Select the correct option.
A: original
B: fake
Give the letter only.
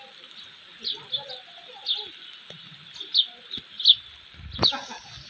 A